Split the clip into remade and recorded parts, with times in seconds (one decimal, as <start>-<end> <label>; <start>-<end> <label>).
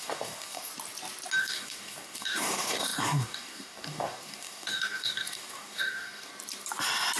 0.0-0.7 remade; 0.7-1.4 recorded; 1.4-6.3 remade; 6.3-7.2 recorded